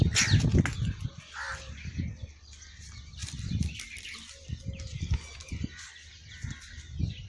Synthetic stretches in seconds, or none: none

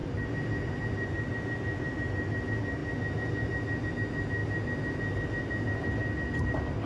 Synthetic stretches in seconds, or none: none

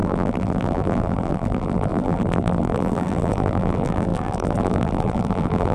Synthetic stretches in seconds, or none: 0.0-5.7 (vocoder, BigVGAN v2)